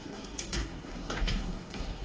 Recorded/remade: remade